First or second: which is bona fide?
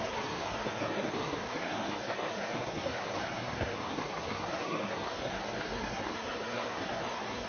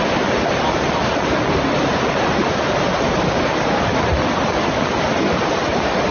second